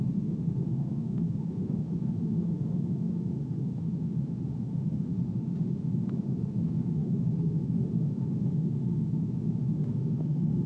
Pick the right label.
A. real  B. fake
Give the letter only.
B